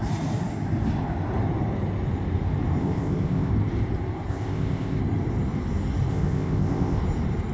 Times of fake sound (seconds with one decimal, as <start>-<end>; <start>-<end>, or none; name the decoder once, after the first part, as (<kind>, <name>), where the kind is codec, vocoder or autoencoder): 2.8-3.5 (codec, ZipCodec); 4.3-5.0; 6.1-7.0